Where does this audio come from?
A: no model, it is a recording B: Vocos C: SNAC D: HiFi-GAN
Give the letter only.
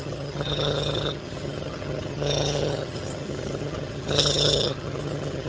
D